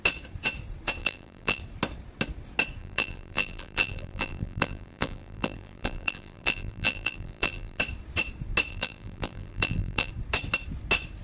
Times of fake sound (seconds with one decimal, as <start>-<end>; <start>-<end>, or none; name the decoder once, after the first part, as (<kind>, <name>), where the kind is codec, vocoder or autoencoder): 1.0-1.6 (vocoder, BigVGAN v2); 2.8-7.8; 8.7-10.1